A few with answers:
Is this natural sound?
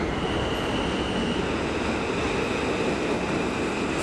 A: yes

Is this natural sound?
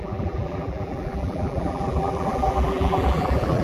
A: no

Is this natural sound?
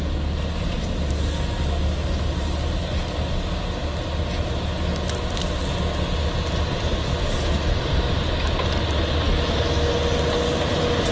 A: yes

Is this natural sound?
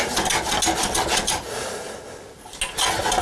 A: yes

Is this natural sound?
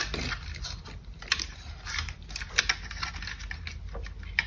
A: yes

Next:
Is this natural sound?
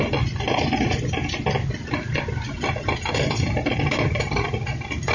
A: yes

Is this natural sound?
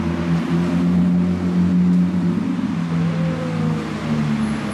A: yes